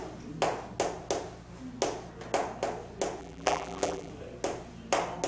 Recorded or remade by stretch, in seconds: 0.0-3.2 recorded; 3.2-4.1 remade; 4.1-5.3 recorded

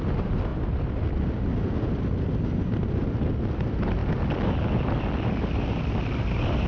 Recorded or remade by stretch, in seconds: 0.0-6.7 recorded